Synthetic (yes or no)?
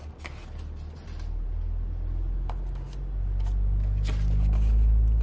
no